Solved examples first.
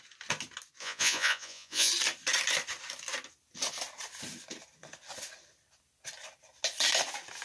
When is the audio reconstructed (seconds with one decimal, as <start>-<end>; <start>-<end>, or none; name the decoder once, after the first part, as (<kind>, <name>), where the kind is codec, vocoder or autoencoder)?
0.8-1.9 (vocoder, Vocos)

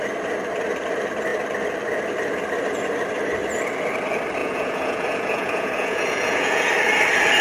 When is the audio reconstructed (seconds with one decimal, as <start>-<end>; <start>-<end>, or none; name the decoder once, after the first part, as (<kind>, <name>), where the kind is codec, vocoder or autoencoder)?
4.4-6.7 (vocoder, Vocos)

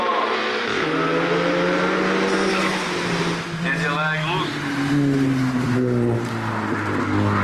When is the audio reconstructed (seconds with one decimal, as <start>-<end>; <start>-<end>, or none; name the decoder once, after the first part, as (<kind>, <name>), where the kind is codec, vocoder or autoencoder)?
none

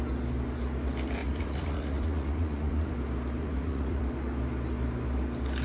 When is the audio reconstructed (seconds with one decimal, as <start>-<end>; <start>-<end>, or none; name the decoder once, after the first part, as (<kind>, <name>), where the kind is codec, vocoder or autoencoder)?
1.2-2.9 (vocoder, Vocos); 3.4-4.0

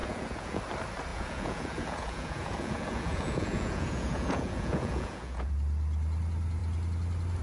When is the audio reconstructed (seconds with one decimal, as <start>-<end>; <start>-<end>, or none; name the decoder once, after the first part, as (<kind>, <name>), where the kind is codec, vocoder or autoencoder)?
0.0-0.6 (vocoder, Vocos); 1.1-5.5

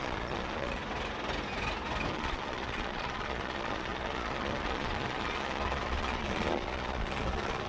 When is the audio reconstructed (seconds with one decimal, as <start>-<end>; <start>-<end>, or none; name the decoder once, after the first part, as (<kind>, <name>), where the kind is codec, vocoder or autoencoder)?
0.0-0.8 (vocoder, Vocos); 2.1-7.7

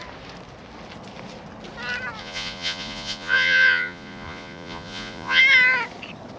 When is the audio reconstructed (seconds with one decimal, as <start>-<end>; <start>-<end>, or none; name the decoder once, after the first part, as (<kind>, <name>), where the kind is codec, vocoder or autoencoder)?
2.2-5.4 (vocoder, Vocos)

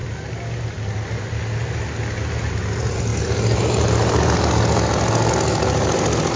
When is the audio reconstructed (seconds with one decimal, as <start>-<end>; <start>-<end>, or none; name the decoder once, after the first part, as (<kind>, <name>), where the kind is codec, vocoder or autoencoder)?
none